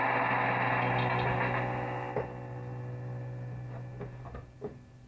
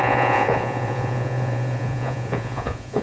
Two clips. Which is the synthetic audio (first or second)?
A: second